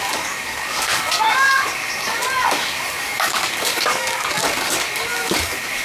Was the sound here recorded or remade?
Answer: remade